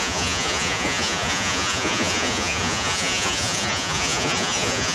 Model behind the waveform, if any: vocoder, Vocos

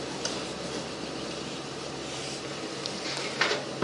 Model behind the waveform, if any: none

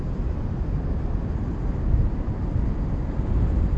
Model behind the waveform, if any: none